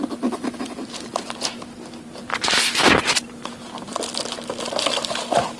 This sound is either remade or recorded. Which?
recorded